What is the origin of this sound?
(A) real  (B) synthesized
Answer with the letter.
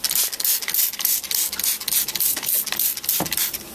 A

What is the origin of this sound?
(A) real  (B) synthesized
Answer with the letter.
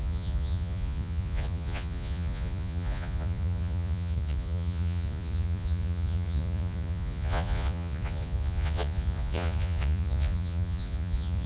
B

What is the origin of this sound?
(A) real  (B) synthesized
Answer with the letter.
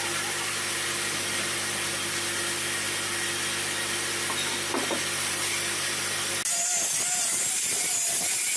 A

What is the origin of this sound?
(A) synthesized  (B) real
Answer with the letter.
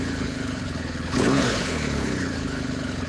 A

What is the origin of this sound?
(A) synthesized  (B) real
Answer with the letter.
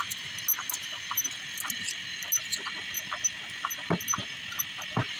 B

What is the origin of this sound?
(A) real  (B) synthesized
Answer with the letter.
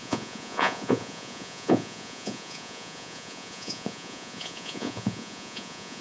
B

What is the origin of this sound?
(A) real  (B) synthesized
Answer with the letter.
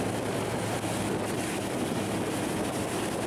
A